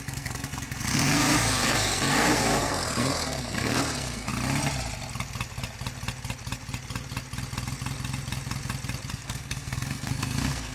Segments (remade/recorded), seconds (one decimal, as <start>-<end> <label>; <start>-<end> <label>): 0.0-4.3 remade; 4.3-9.1 recorded; 9.1-10.7 remade